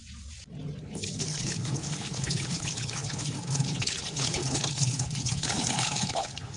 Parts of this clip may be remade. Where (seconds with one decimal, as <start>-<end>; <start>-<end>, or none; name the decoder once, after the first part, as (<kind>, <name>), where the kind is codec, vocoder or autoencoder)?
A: 0.8-6.6 (codec, HILCodec)